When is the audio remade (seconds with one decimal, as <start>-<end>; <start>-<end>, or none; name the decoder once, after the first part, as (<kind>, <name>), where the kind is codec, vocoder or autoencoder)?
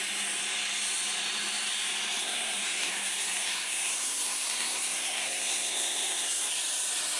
2.2-6.5 (codec, SNAC)